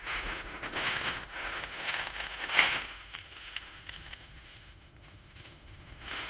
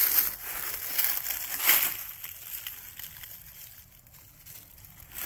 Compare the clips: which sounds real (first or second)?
second